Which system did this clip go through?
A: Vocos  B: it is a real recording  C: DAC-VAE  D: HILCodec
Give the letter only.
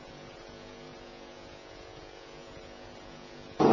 A